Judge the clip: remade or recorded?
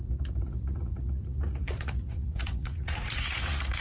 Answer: remade